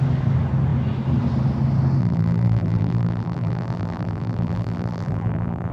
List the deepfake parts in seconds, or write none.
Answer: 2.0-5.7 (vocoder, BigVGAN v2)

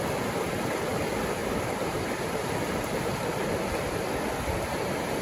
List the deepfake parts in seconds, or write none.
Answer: 1.4-3.4 (vocoder, BigVGAN v2)

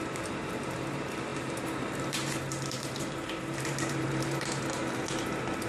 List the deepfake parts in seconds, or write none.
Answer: 0.0-4.8 (vocoder, BigVGAN v2)